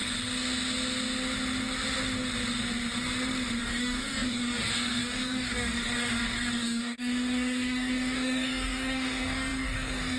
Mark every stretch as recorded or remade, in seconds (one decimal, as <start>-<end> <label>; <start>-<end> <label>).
0.0-3.6 recorded; 3.6-10.2 remade

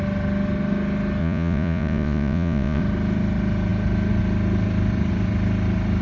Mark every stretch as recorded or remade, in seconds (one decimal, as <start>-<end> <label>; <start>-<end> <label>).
0.0-1.2 recorded; 1.2-2.8 remade; 2.8-6.0 recorded

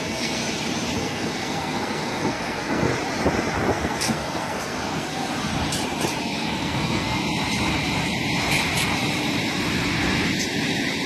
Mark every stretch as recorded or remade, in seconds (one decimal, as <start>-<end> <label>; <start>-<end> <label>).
0.0-0.4 remade; 0.4-1.0 recorded; 1.0-2.9 remade; 2.9-3.7 recorded; 3.7-5.5 remade; 5.5-6.2 recorded; 6.2-7.2 remade; 7.2-11.1 recorded

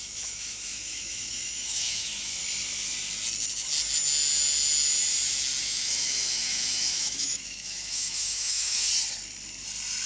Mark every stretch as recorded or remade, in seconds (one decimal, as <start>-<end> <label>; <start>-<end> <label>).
0.0-2.4 remade; 2.4-5.6 recorded; 5.6-8.9 remade; 8.9-10.1 recorded

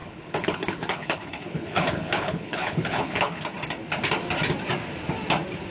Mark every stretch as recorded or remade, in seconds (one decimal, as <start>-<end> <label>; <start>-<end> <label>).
0.0-3.4 remade; 3.4-5.7 recorded

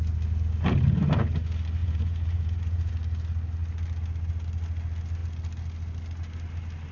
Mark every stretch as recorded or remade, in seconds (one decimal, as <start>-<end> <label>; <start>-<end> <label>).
0.0-1.8 recorded; 1.8-2.9 remade; 2.9-6.9 recorded